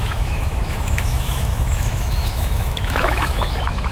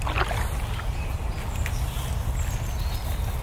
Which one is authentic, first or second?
second